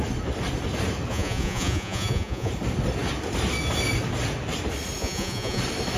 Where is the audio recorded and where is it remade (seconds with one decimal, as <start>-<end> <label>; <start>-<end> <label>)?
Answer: 0.0-1.1 recorded; 1.1-2.5 remade; 2.5-5.0 recorded; 5.0-5.6 remade; 5.6-6.0 recorded